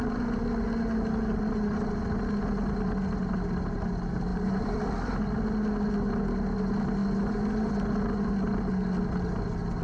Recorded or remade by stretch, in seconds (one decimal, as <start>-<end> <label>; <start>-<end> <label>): 0.0-4.3 recorded; 4.3-5.4 remade; 5.4-9.8 recorded